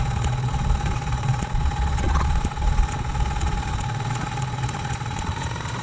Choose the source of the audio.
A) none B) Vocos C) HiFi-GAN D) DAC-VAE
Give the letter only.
B